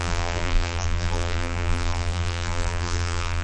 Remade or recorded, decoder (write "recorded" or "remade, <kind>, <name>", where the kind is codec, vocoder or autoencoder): remade, vocoder, BigVGAN v2